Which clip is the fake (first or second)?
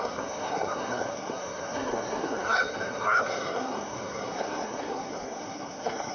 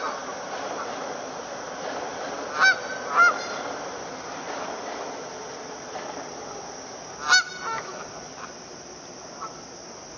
first